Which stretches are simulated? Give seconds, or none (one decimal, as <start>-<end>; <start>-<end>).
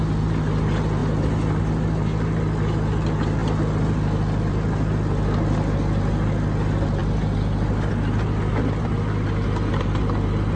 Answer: none